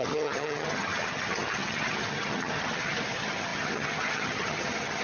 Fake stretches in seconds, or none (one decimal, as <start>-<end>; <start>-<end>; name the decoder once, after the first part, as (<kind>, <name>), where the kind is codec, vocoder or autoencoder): 0.0-5.0 (vocoder, HiFi-GAN)